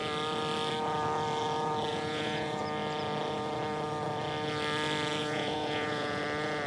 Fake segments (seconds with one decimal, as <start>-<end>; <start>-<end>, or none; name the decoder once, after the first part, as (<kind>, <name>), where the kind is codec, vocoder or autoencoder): 1.9-2.6 (vocoder, Vocos); 5.2-6.2